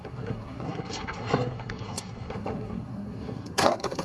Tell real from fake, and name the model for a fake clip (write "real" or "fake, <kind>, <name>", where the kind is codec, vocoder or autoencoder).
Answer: fake, codec, SNAC